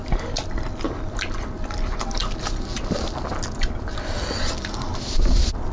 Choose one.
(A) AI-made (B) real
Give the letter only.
B